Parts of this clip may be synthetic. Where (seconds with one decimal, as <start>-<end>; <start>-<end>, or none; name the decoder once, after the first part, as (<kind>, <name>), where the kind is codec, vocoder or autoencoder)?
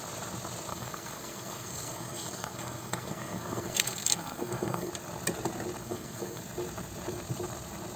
0.7-4.9 (codec, SNAC); 5.8-6.4